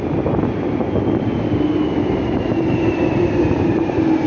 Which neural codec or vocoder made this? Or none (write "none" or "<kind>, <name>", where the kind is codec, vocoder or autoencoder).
none